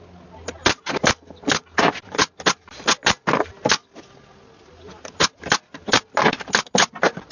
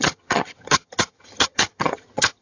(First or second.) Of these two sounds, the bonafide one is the first